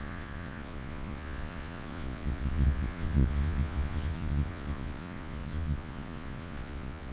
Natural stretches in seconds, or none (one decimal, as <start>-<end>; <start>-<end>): none